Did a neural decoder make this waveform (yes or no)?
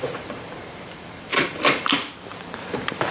yes